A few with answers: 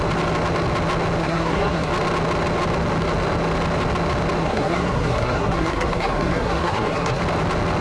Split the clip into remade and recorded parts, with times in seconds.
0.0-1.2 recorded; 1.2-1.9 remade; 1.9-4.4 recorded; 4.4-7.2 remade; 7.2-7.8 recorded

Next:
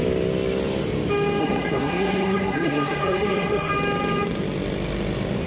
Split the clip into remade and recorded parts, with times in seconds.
0.0-1.4 recorded; 1.4-3.7 remade; 3.7-5.5 recorded

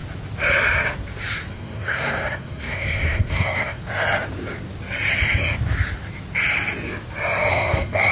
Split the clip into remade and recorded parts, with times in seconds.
0.0-1.5 recorded; 1.5-3.8 remade; 3.8-7.5 recorded; 7.5-8.1 remade

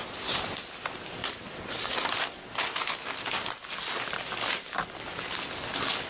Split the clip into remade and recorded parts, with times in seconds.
0.0-6.1 recorded